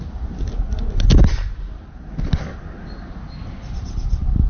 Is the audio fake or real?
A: real